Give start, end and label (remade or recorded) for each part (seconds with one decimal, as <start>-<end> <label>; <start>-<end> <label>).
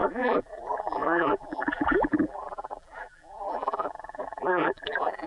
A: 0.0-5.3 remade